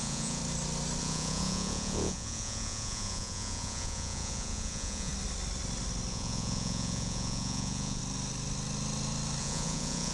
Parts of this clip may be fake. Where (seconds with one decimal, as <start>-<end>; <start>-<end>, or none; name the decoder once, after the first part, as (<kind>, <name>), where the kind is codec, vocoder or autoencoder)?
0.0-0.4 (vocoder, Vocos); 1.0-5.1; 6.1-8.0; 9.4-10.1